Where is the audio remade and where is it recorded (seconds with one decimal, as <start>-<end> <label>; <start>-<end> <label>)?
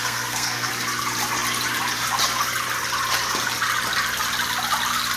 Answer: 0.0-0.7 remade; 0.7-5.2 recorded